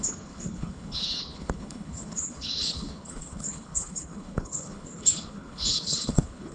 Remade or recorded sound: remade